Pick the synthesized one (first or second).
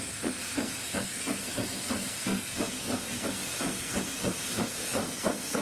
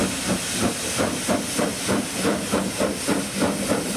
first